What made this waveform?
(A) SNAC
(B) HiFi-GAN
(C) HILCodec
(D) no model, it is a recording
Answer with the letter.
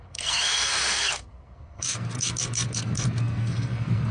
A